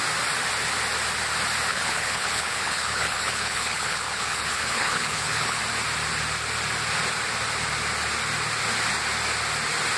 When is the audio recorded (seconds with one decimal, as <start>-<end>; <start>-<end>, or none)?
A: 0.0-1.7; 5.6-10.0